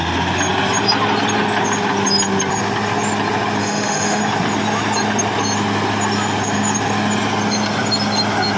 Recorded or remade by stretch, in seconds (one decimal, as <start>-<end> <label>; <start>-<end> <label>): 0.0-3.6 recorded; 3.6-4.2 remade; 4.2-8.6 recorded

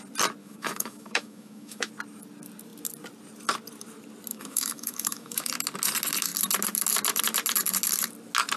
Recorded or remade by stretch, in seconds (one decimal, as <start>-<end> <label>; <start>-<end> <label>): 0.0-0.4 recorded; 0.4-1.9 remade; 1.9-4.3 recorded; 4.3-5.5 remade; 5.5-8.6 recorded

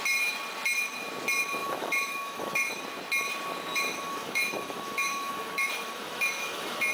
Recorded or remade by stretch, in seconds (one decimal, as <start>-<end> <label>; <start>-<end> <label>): 0.0-1.6 recorded; 1.6-2.8 remade; 2.8-3.7 recorded; 3.7-6.9 remade